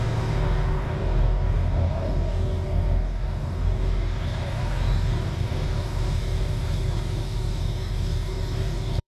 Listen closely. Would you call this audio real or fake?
fake